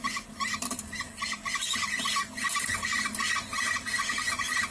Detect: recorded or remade recorded